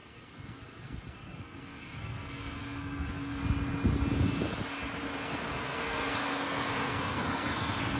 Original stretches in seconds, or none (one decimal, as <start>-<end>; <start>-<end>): 3.4-5.2